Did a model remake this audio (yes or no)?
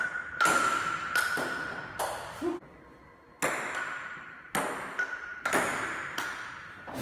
no